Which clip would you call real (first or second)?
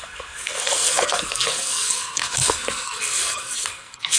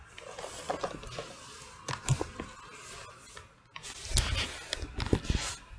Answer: second